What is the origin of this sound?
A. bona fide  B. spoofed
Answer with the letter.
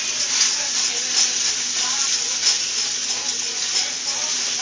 A